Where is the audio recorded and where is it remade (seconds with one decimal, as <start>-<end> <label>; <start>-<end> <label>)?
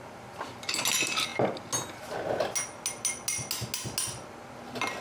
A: 0.0-5.0 recorded